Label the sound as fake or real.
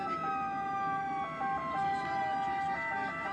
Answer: real